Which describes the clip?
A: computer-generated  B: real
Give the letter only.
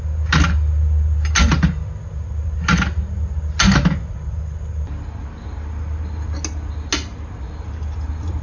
B